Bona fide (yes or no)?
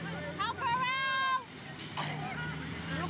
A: yes